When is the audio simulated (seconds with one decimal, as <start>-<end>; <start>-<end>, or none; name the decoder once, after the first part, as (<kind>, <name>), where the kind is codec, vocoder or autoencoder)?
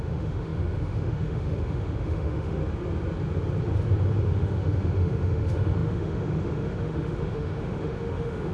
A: 0.0-2.6 (autoencoder, DAC-VAE); 4.2-8.5